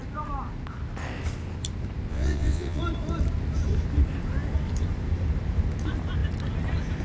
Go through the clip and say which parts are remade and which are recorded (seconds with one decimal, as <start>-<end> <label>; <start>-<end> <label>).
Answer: 0.0-2.1 recorded; 2.1-2.8 remade; 2.8-7.0 recorded